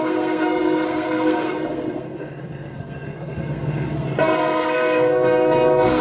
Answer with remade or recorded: remade